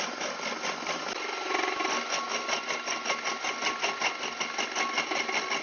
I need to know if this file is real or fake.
real